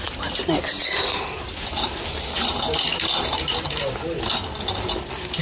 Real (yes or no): yes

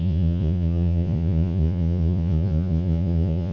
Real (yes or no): no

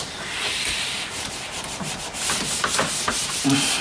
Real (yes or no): no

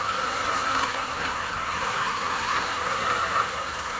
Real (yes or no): no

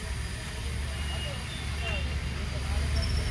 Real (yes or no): yes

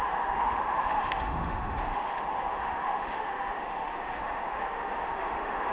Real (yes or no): no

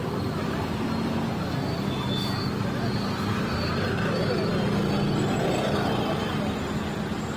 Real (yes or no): yes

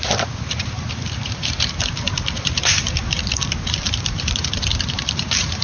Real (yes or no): no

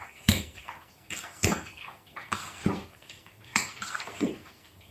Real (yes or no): no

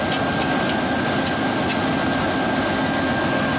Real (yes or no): yes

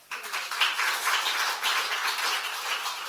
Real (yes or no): yes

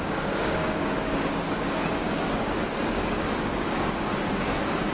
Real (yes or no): no